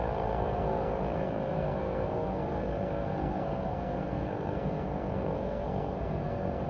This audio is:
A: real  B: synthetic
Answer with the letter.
B